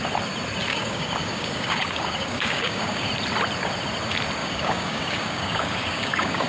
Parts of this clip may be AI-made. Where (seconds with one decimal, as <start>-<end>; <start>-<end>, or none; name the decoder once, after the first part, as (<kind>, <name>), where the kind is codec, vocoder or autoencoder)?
0.7-3.1 (codec, DAC); 4.4-6.5